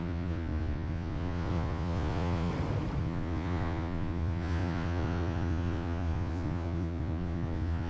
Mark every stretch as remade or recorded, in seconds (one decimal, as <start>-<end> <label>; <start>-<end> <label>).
0.0-2.5 remade; 2.5-3.0 recorded; 3.0-7.9 remade